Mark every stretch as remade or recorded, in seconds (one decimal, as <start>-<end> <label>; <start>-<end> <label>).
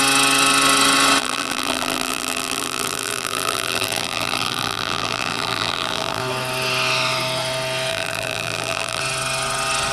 0.0-1.2 recorded; 1.2-6.2 remade; 6.2-7.9 recorded; 7.9-9.0 remade; 9.0-9.9 recorded